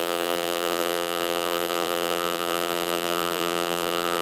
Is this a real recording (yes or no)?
no